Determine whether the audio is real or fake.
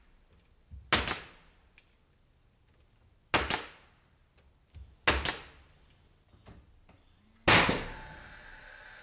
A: real